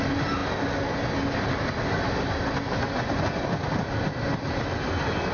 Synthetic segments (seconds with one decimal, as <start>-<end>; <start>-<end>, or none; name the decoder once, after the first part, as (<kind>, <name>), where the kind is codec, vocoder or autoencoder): none

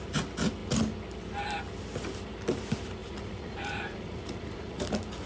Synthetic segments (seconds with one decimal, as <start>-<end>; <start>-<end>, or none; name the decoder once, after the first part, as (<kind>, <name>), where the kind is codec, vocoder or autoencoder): 3.0-4.8 (vocoder, Vocos)